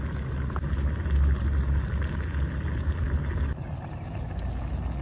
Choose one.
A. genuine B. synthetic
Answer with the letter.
A